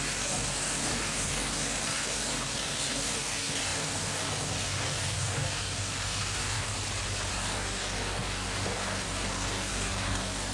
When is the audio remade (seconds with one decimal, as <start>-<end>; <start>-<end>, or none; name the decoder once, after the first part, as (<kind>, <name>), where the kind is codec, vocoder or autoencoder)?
0.0-6.7 (codec, DAC); 7.3-10.5